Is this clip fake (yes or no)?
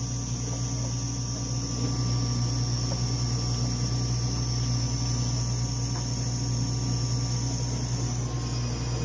no